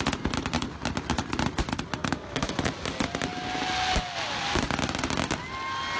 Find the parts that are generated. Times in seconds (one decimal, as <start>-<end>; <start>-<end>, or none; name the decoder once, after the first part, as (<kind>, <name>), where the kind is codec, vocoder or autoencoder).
2.0-2.7 (autoencoder, DAC-VAE)